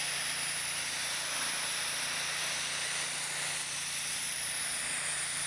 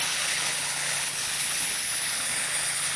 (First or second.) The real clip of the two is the first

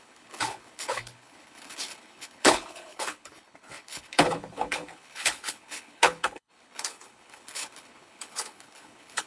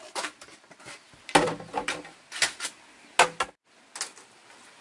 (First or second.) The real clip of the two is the second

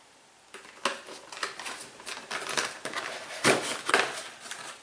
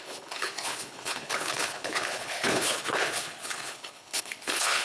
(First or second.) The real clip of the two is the first